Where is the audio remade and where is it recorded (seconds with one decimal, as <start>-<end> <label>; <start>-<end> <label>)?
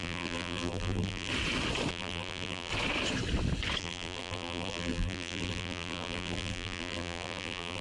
0.0-1.3 remade; 1.3-1.9 recorded; 1.9-2.7 remade; 2.7-3.8 recorded; 3.8-7.8 remade